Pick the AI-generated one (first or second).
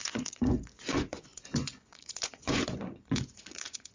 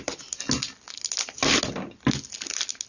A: first